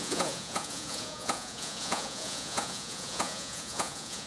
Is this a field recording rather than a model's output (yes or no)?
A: no